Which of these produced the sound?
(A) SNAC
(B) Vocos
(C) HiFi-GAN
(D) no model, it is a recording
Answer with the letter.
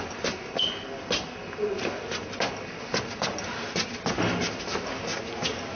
D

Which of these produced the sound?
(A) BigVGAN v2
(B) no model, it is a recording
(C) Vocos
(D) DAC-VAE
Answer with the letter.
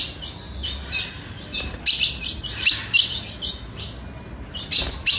B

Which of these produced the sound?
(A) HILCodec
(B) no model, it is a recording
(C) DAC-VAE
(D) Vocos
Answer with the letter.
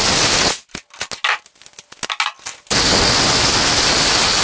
B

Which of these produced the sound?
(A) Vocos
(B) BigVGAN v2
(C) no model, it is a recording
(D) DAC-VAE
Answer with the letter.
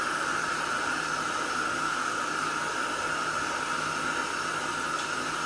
C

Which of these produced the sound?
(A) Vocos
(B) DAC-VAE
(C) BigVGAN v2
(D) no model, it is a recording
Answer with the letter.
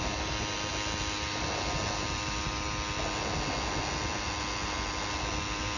D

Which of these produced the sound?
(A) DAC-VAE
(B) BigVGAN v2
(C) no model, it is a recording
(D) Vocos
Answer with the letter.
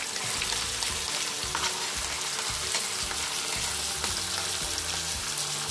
C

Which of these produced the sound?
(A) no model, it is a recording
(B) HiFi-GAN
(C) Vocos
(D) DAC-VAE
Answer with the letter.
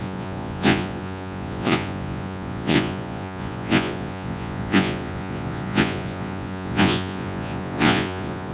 C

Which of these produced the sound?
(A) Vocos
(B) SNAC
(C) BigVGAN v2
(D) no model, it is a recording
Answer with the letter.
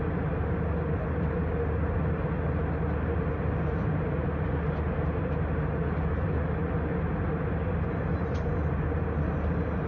D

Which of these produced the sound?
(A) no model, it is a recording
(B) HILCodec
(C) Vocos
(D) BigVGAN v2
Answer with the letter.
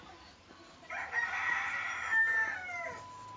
A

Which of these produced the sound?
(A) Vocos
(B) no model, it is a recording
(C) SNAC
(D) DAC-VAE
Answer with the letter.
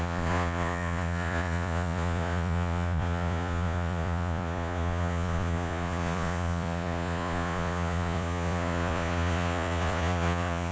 A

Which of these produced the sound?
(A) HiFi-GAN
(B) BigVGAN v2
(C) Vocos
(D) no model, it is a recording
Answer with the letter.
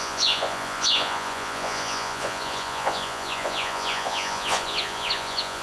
C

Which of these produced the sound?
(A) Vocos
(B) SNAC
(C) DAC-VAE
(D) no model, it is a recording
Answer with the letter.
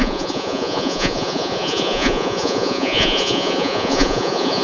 A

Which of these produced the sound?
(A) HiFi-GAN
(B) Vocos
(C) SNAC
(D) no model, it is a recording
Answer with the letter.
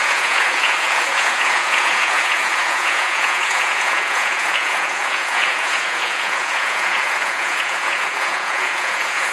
B